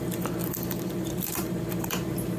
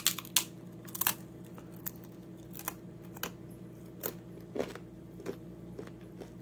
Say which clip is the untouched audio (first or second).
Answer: second